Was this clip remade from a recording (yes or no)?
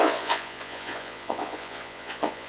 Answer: yes